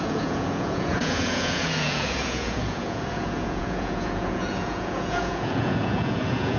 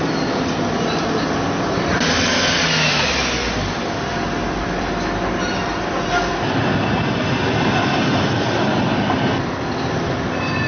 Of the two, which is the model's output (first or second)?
first